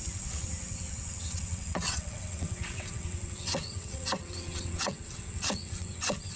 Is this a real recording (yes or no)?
no